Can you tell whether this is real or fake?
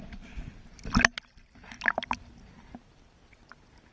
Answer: real